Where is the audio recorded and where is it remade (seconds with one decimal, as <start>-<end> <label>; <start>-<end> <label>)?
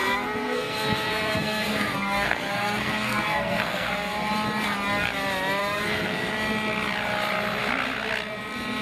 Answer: 0.0-4.3 remade; 4.3-5.6 recorded; 5.6-6.3 remade; 6.3-8.8 recorded